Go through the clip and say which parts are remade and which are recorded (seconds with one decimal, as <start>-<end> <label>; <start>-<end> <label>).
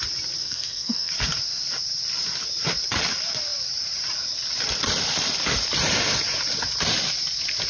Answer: 0.0-0.4 recorded; 0.4-1.1 remade; 1.1-7.7 recorded